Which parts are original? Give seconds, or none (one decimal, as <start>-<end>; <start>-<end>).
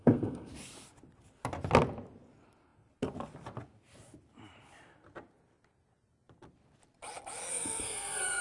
0.5-7.5